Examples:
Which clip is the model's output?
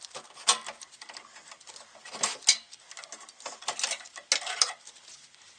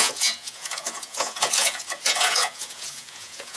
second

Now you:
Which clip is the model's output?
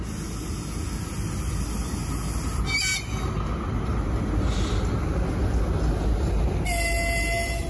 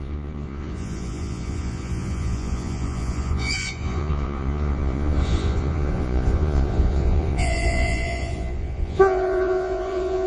second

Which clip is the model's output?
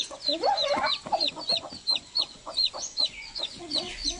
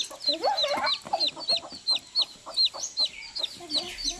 first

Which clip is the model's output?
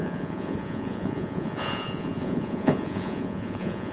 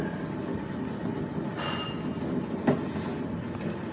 first